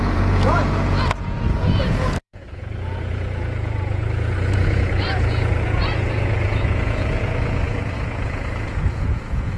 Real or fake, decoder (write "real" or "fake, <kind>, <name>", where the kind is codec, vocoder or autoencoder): fake, vocoder, Vocos